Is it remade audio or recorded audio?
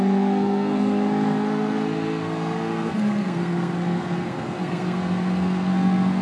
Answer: remade